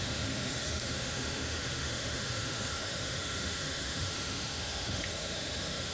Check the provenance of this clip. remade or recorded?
remade